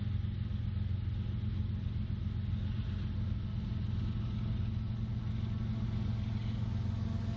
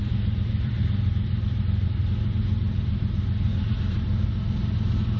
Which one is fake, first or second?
second